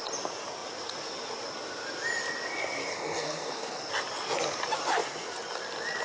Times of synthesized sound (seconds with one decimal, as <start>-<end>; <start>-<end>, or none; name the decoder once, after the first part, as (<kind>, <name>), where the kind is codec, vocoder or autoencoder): 2.9-3.9 (codec, SNAC)